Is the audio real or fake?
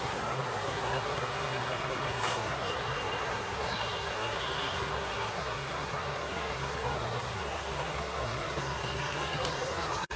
fake